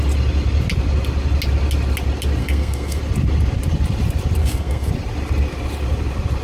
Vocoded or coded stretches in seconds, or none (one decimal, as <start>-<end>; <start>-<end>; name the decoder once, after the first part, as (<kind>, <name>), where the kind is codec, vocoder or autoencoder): 2.4-3.0 (codec, SNAC); 4.4-4.9